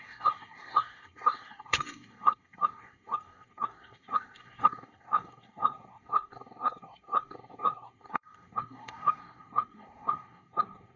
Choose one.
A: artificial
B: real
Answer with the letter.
A